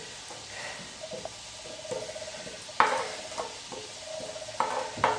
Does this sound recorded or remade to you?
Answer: recorded